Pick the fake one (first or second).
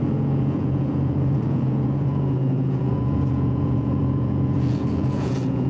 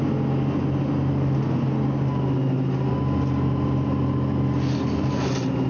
first